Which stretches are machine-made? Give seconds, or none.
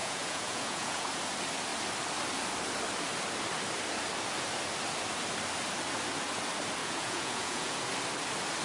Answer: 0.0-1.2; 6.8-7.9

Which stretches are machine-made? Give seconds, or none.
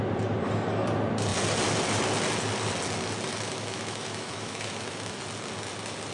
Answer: 3.3-5.2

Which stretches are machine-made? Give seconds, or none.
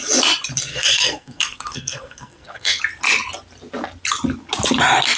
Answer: 0.7-2.8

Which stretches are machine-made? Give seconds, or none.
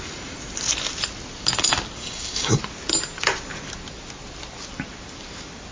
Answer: 2.0-2.6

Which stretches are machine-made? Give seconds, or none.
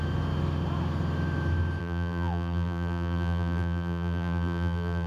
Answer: 1.8-5.1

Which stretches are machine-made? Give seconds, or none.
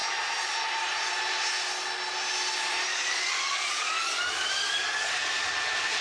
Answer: 2.9-5.1